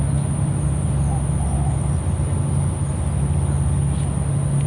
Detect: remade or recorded recorded